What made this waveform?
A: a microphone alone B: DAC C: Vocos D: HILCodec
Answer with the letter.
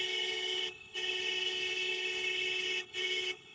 D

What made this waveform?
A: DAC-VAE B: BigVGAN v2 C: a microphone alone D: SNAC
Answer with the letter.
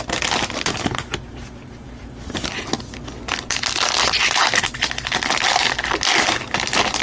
C